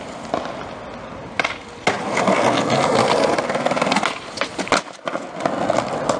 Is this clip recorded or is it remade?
recorded